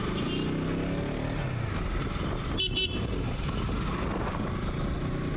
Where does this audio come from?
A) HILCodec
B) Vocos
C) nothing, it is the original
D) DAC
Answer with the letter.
C